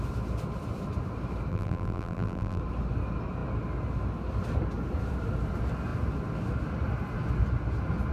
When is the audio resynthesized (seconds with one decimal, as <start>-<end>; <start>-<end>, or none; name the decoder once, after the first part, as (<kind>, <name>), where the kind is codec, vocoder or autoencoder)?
1.5-2.6 (vocoder, BigVGAN v2)